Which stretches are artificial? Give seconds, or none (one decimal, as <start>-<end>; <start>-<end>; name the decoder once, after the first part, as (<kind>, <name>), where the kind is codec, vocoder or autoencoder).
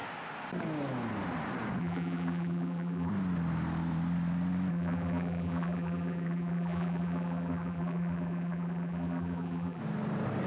1.8-3.1 (vocoder, BigVGAN v2); 4.7-9.8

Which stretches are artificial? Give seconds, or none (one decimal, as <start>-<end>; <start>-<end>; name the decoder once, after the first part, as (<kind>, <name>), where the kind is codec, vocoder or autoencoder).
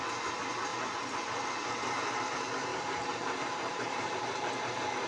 0.7-1.4 (vocoder, BigVGAN v2); 2.7-4.2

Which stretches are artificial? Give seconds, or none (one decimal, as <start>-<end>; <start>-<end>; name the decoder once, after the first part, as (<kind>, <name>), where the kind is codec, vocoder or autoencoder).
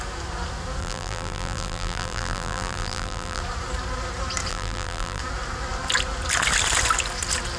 0.8-3.4 (vocoder, BigVGAN v2); 4.5-5.2